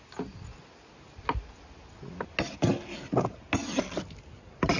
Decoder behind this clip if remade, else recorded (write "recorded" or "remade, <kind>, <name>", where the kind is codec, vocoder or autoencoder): recorded